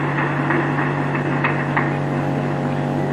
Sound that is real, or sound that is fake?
real